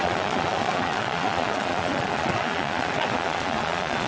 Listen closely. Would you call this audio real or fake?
fake